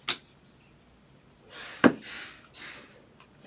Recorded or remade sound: recorded